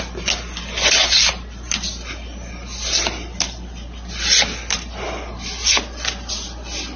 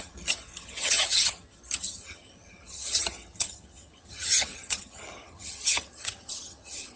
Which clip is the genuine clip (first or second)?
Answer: first